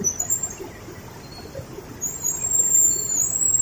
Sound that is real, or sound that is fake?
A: fake